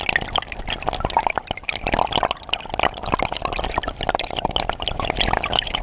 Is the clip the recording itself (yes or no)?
yes